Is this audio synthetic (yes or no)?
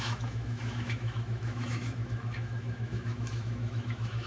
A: yes